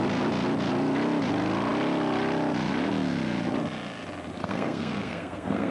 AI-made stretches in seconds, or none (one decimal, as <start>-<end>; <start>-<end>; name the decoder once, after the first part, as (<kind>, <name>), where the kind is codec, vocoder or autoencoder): 4.4-5.7 (codec, SNAC)